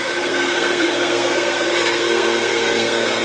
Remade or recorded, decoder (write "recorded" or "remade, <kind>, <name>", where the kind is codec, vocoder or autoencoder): remade, codec, SNAC